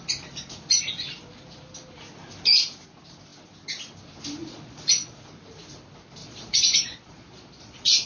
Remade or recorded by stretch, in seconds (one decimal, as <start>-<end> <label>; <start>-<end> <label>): 0.0-4.4 recorded; 4.4-5.2 remade; 5.2-6.2 recorded; 6.2-8.1 remade